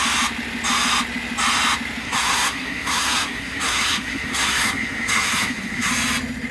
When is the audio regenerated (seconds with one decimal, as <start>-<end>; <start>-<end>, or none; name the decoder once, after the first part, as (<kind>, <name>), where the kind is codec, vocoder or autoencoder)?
2.0-5.9 (codec, SNAC)